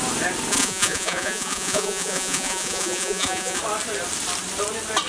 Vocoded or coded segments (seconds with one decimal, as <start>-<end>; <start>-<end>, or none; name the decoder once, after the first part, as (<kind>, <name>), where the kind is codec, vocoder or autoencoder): 0.5-3.6 (vocoder, Vocos)